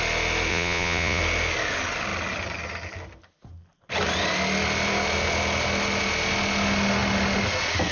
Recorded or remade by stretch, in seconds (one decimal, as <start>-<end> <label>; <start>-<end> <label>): 0.0-0.5 recorded; 0.5-1.2 remade; 1.2-7.9 recorded